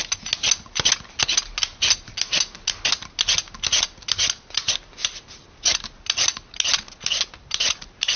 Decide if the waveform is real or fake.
real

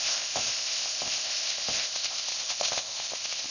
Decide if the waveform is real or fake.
fake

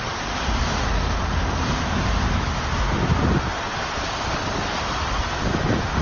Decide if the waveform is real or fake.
real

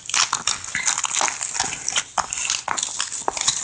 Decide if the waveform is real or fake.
real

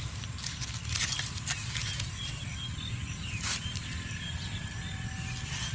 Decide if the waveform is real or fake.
real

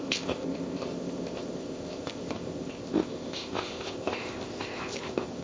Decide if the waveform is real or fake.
fake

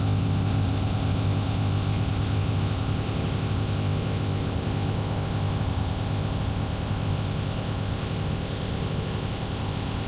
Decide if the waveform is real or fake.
fake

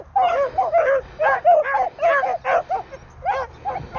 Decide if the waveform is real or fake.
real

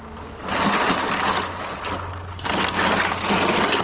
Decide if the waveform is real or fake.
real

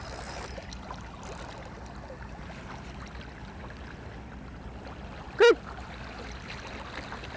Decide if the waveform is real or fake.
real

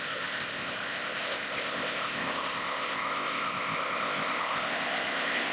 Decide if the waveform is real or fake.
fake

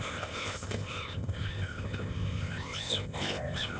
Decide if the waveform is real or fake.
fake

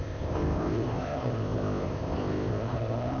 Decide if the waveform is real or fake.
fake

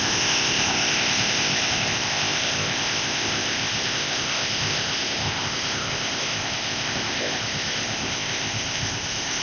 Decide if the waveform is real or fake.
fake